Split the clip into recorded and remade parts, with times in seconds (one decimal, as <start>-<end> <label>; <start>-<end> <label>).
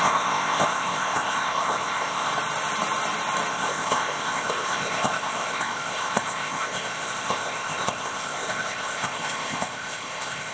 0.0-2.3 remade; 2.3-3.5 recorded; 3.5-10.5 remade